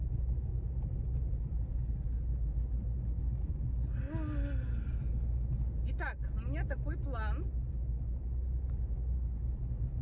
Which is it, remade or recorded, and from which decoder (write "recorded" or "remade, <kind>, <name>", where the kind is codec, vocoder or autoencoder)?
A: recorded